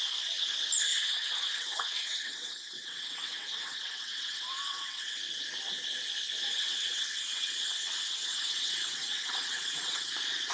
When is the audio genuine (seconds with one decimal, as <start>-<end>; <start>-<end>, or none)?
0.0-0.9; 5.2-6.5; 10.1-10.5

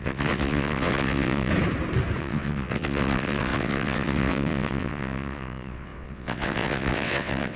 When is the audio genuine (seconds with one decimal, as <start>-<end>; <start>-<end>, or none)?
1.5-2.2

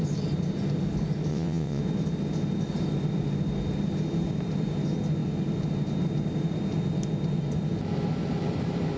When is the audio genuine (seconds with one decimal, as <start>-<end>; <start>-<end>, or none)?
0.0-1.3; 1.8-9.0

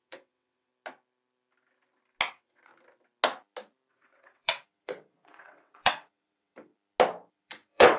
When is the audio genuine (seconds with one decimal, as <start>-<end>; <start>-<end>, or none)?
0.7-2.3; 2.7-3.9; 6.7-7.3

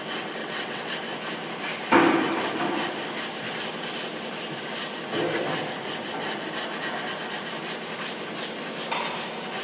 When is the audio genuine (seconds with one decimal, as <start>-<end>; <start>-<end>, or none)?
0.0-0.4; 0.9-9.6

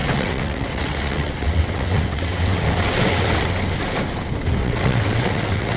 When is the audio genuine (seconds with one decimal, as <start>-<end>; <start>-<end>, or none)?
3.5-4.6

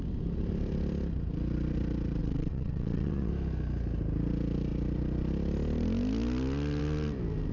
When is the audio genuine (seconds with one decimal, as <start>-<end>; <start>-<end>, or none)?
0.0-2.2; 3.3-7.5

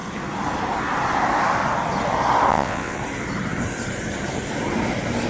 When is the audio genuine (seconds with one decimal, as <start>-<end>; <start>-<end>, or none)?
0.0-2.5; 3.0-5.3